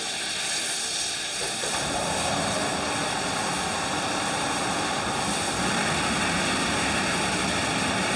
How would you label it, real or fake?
real